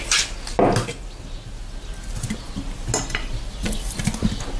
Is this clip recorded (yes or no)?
yes